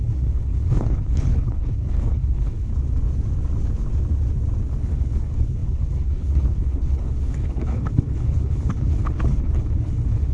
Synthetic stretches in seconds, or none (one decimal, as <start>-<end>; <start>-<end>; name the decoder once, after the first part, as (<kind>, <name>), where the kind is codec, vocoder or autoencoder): 0.0-2.7 (codec, HILCodec); 4.8-10.3

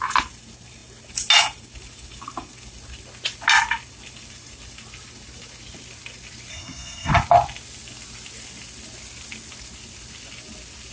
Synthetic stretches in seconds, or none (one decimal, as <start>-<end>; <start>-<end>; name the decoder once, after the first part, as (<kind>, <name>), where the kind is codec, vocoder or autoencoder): 6.5-7.1 (codec, SNAC)

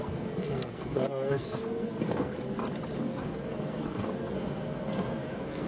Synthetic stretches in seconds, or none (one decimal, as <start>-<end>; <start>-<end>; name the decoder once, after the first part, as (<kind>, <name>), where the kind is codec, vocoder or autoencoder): 0.0-2.3 (codec, SNAC); 3.0-5.7

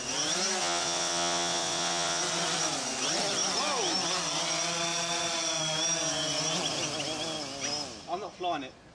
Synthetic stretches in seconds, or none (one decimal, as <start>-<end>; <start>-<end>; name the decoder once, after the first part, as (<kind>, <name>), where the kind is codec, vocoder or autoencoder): 0.6-2.2 (vocoder, WaveNeXt)

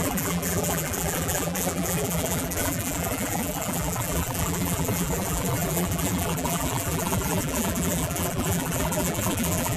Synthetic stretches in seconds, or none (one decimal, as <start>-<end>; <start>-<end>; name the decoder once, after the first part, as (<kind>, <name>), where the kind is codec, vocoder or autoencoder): 0.0-9.8 (vocoder, BigVGAN v2)